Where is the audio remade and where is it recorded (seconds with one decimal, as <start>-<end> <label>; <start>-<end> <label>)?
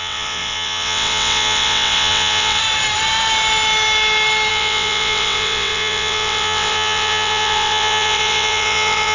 0.0-2.6 remade; 2.6-4.5 recorded; 4.5-9.1 remade